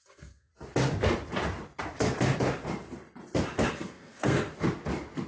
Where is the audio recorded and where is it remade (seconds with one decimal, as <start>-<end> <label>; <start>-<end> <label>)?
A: 0.0-0.5 remade; 0.5-3.7 recorded; 3.7-4.5 remade; 4.5-5.3 recorded